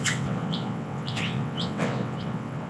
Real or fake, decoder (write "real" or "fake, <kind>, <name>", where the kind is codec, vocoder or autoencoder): fake, vocoder, WaveNeXt